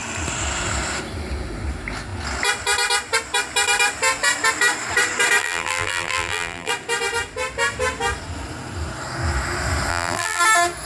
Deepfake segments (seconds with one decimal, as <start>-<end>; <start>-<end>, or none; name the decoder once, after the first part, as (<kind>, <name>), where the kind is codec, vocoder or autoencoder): 5.4-6.7 (vocoder, BigVGAN v2); 9.9-10.4